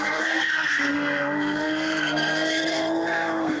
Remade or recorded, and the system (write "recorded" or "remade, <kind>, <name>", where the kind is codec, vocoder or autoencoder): remade, codec, SNAC